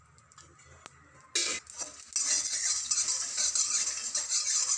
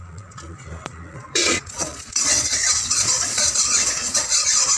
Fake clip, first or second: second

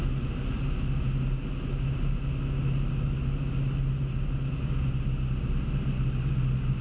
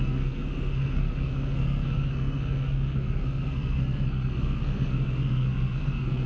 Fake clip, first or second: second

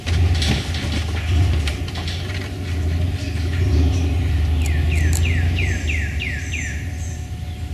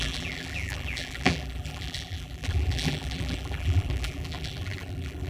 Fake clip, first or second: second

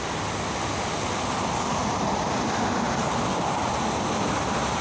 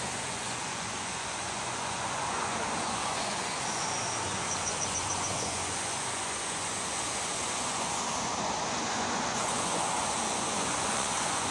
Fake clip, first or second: second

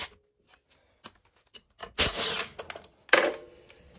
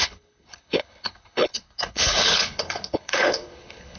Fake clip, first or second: second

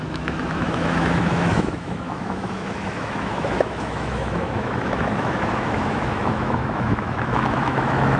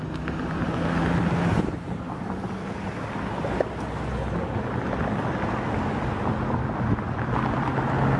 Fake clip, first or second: first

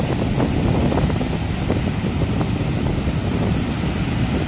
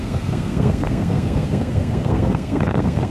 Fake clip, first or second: second